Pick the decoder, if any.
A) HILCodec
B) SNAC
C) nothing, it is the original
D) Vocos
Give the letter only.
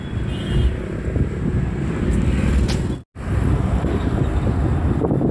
C